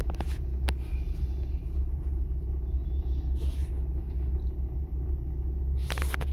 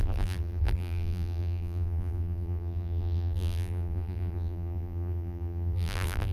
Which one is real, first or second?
first